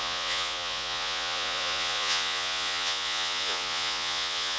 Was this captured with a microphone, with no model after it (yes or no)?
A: no